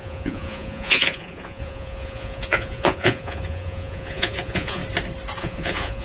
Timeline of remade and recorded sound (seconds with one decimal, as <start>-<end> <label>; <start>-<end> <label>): 0.0-4.8 remade; 4.8-5.4 recorded; 5.4-6.0 remade